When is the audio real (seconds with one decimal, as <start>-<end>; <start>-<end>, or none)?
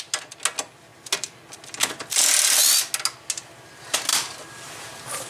0.0-4.1; 4.7-5.3